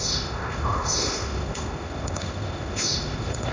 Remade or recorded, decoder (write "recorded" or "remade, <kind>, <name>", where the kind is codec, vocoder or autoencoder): remade, autoencoder, DAC-VAE